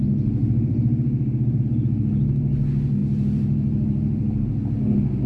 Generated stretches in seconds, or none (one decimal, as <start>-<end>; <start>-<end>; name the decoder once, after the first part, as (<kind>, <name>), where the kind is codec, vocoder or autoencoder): 0.4-1.6 (vocoder, BigVGAN v2); 3.0-4.8